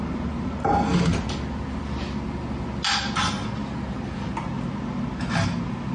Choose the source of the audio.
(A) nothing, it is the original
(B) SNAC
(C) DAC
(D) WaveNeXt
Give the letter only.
A